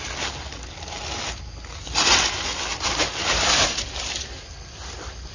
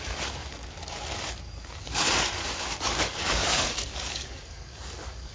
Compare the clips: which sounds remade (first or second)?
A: second